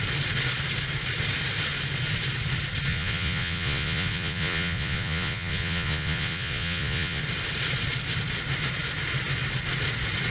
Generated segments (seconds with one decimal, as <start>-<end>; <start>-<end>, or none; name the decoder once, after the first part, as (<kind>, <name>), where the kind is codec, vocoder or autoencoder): 2.9-7.2 (vocoder, Vocos)